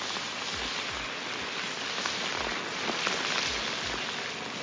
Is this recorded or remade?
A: recorded